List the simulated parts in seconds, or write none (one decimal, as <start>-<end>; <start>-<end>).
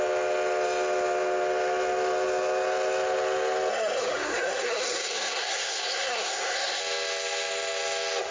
3.7-6.8